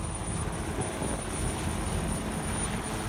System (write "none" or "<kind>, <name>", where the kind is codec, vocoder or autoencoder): none